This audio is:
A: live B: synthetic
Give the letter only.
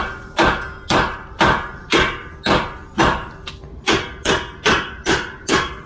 A